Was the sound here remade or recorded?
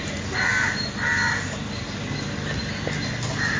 remade